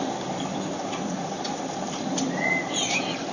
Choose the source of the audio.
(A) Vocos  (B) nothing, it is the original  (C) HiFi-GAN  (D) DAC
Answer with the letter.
B